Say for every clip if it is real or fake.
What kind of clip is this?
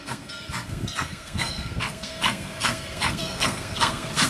fake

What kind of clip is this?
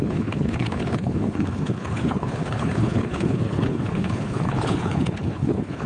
fake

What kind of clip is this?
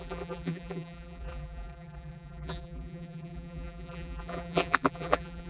fake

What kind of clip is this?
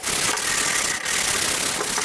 real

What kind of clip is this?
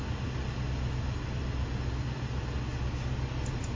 real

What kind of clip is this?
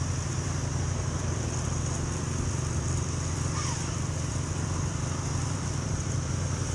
fake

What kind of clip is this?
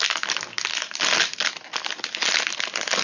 real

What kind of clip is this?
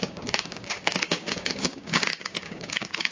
fake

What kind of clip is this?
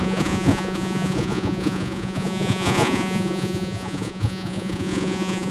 fake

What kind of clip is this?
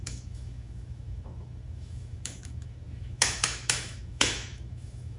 fake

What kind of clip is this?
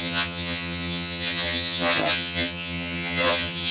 fake